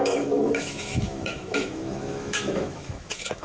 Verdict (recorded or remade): remade